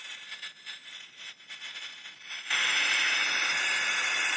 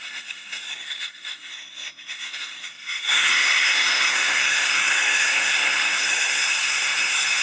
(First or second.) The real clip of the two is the first